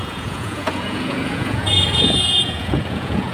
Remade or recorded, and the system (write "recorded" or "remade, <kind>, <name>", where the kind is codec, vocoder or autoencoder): remade, vocoder, Vocos